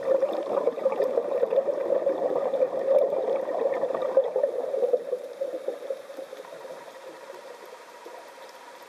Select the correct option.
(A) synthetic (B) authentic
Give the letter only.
A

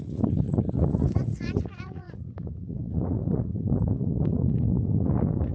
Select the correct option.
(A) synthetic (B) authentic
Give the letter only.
A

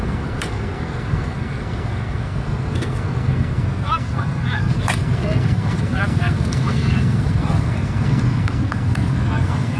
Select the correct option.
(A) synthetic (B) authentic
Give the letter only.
A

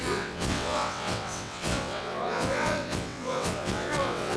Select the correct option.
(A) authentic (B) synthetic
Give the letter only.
B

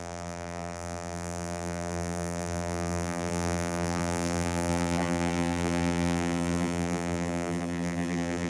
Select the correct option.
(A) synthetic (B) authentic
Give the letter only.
A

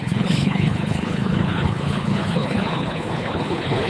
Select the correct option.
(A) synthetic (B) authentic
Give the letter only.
A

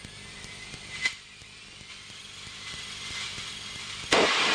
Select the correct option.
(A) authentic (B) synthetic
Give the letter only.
B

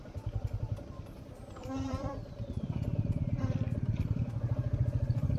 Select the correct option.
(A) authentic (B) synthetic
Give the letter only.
B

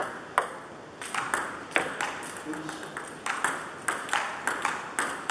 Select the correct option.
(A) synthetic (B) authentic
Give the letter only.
B